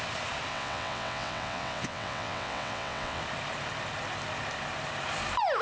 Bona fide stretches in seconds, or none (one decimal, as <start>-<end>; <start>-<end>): 0.0-0.5; 3.2-5.6